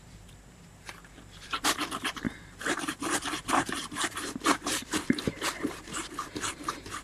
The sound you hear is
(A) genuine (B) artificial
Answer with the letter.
B